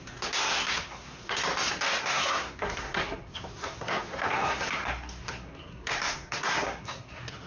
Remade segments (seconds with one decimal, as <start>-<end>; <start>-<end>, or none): 0.0-1.4; 2.0-7.5